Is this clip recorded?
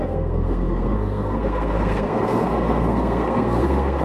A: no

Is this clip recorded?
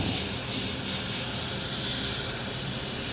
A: yes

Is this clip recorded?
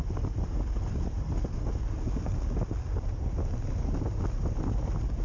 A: yes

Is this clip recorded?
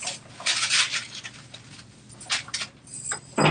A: yes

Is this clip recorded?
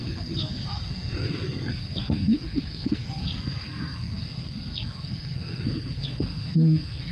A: no